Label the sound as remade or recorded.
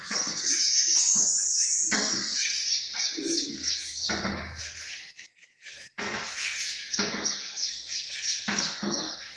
remade